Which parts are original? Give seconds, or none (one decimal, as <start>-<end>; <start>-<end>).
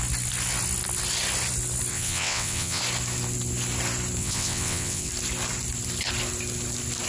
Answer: 0.0-1.9; 2.8-4.2; 5.1-7.1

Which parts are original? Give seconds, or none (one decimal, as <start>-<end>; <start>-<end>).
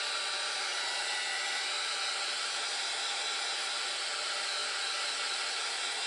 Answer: 0.0-6.1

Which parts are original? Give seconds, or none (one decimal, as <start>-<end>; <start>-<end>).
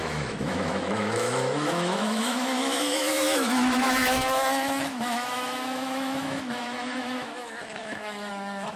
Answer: none